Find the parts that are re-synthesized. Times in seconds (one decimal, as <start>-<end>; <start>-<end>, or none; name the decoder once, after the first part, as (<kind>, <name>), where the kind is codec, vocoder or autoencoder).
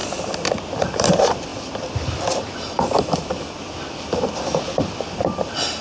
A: 0.8-5.8 (vocoder, BigVGAN v2)